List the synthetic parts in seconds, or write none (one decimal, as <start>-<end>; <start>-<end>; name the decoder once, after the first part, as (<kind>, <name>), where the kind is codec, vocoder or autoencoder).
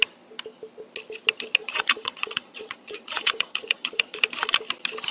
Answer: 1.6-4.2 (vocoder, Vocos)